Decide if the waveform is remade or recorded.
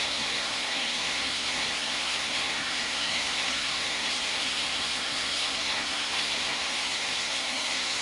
remade